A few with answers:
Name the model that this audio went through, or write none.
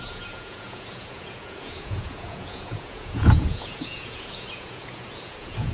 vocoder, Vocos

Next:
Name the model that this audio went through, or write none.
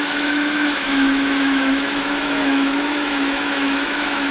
autoencoder, DAC-VAE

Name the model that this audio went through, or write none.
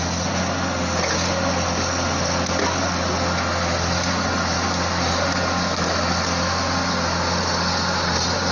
none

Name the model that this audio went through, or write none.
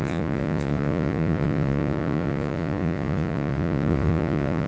vocoder, Vocos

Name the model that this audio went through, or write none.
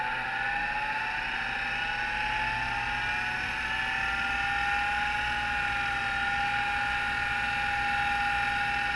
none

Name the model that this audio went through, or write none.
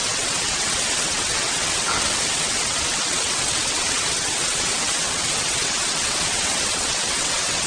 vocoder, WaveNeXt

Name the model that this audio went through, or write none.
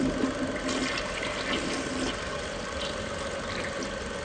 none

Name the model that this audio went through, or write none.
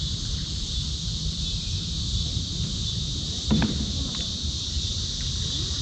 none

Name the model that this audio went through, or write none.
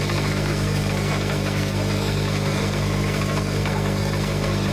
codec, SNAC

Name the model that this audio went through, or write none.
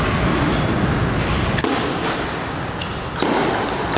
none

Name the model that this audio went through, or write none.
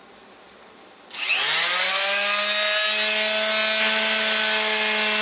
none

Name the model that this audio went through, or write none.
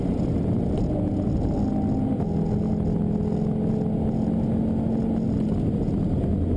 none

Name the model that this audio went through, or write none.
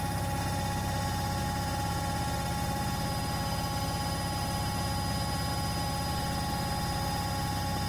none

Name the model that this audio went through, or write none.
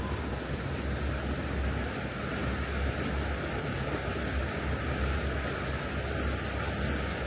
none